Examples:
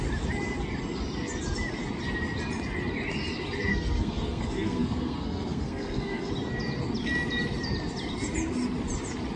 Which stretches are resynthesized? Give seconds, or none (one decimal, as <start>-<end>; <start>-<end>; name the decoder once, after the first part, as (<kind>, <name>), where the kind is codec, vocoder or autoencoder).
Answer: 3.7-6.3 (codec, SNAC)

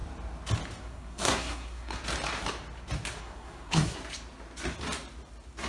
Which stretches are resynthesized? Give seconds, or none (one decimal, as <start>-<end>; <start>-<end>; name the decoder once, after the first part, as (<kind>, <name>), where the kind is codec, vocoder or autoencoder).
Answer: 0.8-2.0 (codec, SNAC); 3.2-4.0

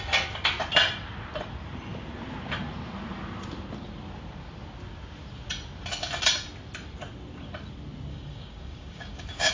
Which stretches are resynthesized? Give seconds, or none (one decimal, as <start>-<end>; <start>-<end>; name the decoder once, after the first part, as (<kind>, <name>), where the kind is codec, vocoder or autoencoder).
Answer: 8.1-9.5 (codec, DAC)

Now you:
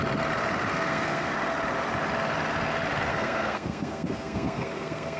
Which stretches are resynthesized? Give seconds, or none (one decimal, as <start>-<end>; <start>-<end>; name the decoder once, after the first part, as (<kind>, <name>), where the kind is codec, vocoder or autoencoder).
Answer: 0.7-1.3 (codec, SNAC); 3.1-5.2

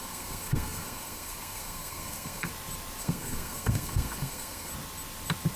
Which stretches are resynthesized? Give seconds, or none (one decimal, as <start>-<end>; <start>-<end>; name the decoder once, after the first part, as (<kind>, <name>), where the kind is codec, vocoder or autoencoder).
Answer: 0.0-2.5 (codec, SNAC); 3.0-4.7

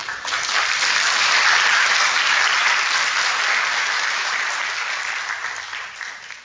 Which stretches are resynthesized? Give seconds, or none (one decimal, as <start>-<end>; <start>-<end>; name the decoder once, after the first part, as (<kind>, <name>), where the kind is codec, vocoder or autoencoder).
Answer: none

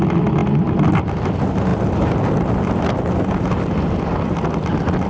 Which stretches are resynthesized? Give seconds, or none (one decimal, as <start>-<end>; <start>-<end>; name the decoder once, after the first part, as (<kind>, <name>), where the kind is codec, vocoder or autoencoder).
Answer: none

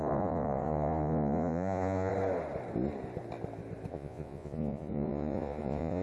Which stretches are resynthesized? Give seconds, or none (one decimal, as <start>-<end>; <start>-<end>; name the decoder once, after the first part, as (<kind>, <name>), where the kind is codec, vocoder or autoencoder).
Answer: 0.0-2.1 (vocoder, Vocos); 3.9-6.0